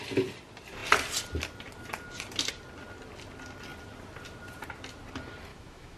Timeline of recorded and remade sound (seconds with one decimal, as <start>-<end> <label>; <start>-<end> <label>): 0.0-5.5 recorded; 5.5-6.0 remade